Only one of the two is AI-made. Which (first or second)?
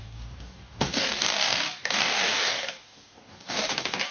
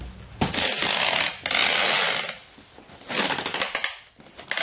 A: first